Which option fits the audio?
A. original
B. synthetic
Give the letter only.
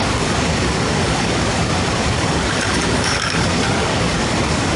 B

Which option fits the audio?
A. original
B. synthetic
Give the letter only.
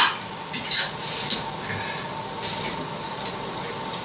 A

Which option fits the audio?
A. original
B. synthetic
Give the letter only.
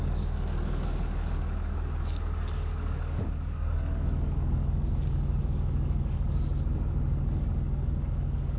B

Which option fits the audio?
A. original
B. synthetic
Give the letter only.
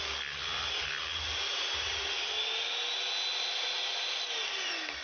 A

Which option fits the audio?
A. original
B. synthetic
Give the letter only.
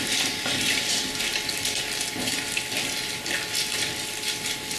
A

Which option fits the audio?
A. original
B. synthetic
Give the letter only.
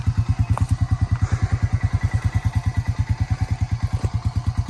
A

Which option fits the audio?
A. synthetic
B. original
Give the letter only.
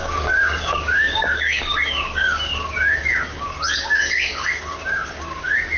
A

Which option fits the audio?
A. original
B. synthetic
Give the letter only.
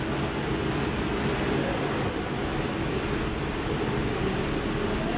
A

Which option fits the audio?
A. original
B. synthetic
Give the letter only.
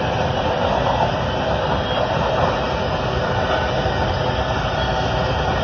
A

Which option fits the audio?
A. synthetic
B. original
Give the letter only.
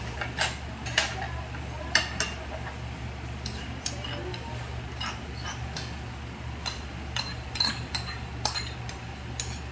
B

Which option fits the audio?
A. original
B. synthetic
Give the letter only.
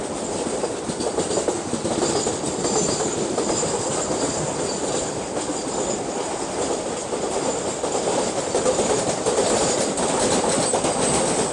A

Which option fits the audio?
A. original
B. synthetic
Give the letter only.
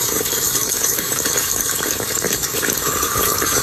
B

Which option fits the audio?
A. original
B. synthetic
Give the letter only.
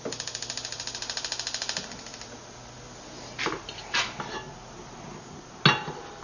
A